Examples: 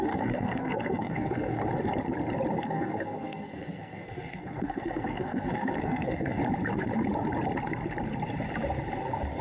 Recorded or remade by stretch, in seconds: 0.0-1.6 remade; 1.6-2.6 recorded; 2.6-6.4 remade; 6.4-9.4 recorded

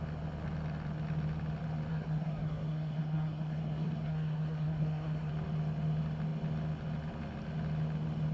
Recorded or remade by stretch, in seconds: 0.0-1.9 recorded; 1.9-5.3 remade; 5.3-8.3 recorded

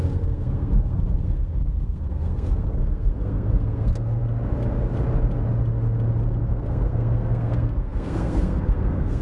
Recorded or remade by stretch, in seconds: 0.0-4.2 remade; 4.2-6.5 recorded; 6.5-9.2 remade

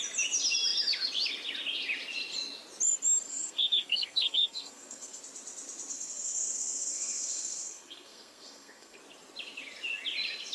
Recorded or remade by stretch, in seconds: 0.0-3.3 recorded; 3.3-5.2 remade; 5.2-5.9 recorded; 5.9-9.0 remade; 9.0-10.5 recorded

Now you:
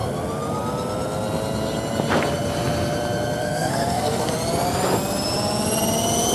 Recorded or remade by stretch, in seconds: 0.0-3.4 recorded; 3.4-4.3 remade; 4.3-6.3 recorded

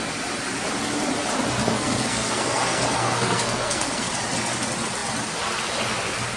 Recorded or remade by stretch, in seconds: 0.0-1.6 recorded; 1.6-4.1 remade; 4.1-6.4 recorded

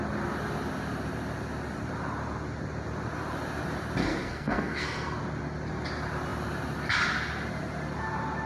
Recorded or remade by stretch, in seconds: 0.0-4.0 recorded; 4.0-5.2 remade; 5.2-8.5 recorded

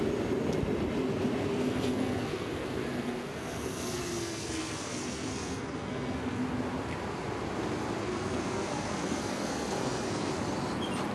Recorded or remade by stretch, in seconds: 0.0-1.6 recorded; 1.6-6.4 remade; 6.4-8.0 recorded; 8.0-10.3 remade; 10.3-11.1 recorded